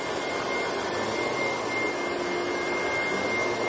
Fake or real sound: real